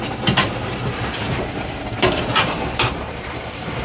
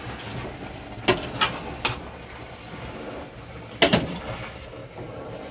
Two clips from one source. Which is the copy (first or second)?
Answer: first